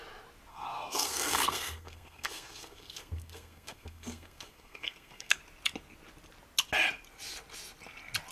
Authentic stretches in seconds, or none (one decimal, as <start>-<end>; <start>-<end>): 0.0-0.5; 5.4-8.3